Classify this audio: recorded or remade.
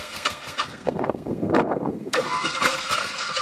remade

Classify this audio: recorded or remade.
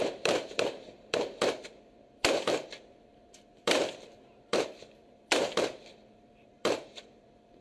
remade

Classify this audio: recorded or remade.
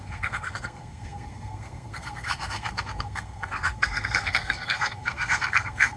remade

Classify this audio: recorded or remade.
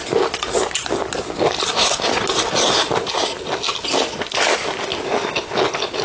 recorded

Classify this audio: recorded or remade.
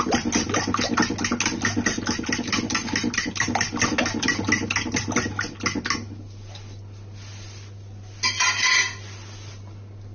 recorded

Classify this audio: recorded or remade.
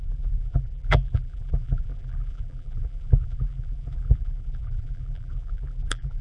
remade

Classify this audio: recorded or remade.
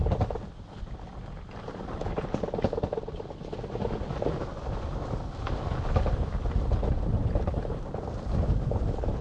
recorded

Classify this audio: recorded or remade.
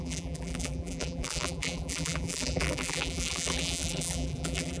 remade